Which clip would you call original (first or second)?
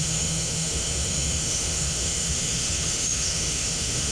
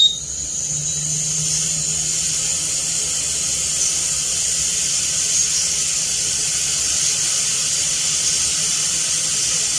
second